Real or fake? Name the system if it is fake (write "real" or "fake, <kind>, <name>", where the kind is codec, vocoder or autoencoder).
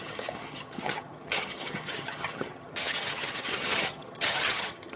fake, vocoder, HiFi-GAN